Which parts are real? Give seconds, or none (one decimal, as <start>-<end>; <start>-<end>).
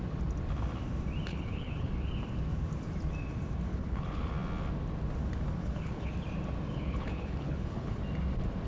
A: 0.0-1.3; 1.9-3.7; 4.3-5.6; 6.1-6.7; 8.0-8.7